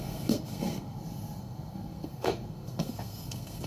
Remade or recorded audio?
remade